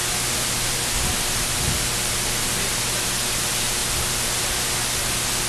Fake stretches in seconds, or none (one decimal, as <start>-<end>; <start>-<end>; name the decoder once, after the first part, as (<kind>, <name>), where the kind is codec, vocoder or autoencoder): none